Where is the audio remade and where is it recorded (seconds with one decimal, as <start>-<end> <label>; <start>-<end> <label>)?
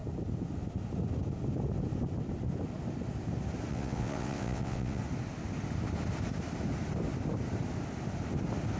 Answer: 0.0-3.7 recorded; 3.7-5.0 remade; 5.0-8.8 recorded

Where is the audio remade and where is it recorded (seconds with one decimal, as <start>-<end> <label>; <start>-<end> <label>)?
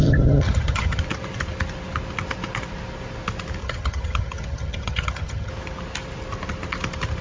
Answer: 0.0-1.0 remade; 1.0-3.6 recorded; 3.6-5.5 remade; 5.5-7.2 recorded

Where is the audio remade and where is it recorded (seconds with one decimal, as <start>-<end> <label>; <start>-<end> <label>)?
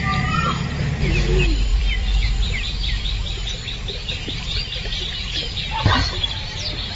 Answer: 0.0-1.7 recorded; 1.7-5.9 remade; 5.9-7.0 recorded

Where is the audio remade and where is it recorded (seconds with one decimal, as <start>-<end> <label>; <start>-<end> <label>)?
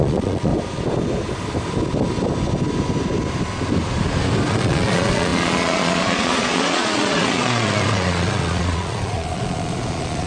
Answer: 0.0-0.5 remade; 0.5-4.5 recorded; 4.5-10.3 remade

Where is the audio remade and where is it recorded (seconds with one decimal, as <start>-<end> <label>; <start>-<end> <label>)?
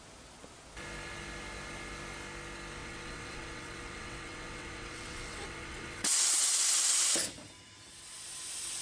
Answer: 0.0-2.8 recorded; 2.8-6.5 remade; 6.5-8.8 recorded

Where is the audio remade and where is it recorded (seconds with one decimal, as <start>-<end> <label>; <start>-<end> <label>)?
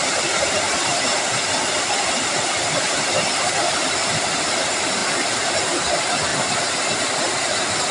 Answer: 0.0-7.9 recorded